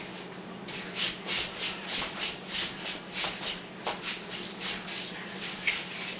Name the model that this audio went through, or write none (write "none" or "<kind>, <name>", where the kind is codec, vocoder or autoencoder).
none